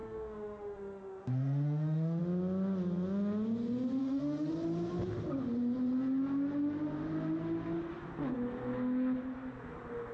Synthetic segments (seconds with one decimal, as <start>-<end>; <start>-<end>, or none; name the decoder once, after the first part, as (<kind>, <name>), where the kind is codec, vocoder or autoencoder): 0.0-2.2 (autoencoder, DAC-VAE); 4.0-4.5